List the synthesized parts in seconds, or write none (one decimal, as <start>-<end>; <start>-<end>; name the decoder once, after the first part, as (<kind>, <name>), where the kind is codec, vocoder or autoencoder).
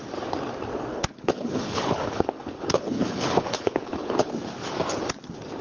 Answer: 0.9-4.3 (codec, HILCodec)